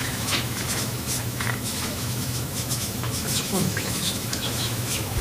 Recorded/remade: remade